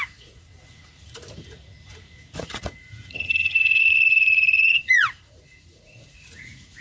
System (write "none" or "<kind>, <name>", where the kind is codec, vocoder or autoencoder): vocoder, Vocos